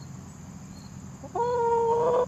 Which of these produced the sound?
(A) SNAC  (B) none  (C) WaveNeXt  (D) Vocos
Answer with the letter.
B